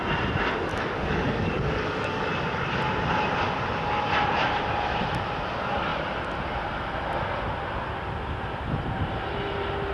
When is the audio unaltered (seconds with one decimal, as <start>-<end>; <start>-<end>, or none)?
0.0-0.7; 2.3-9.9